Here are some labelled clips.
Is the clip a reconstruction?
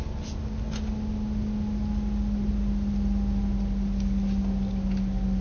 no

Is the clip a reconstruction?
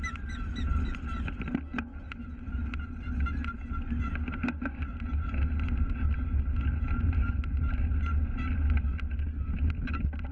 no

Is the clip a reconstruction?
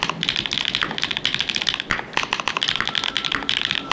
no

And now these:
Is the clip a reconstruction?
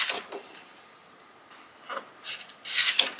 no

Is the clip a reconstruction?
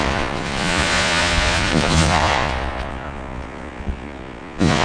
yes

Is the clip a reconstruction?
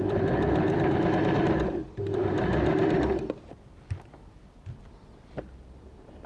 no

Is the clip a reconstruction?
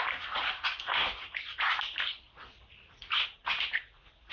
no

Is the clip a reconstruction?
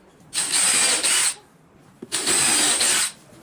no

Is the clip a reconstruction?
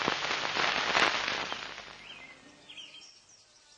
no